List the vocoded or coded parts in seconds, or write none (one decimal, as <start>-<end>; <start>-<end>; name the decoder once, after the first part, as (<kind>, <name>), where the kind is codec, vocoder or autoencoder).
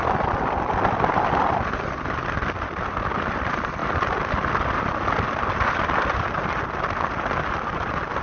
none